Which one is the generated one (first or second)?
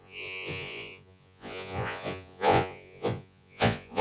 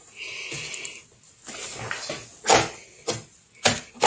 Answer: first